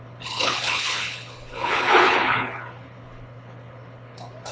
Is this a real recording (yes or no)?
no